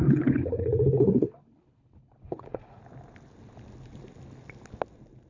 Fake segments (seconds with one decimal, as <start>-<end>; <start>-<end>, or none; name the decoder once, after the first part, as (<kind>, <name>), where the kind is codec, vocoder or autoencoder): 0.0-2.8 (codec, HILCodec)